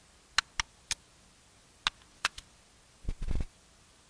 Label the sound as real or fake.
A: real